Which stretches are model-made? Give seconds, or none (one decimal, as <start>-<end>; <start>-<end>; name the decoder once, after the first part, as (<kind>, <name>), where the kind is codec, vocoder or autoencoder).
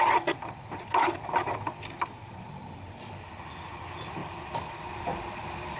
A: none